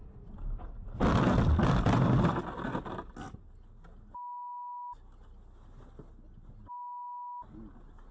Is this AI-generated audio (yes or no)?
no